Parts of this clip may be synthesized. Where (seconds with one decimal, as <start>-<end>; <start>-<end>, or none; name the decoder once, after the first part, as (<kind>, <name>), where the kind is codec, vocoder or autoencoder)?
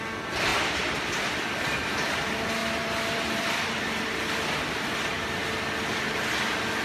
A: 0.5-1.9 (vocoder, BigVGAN v2); 2.6-3.8; 5.4-6.2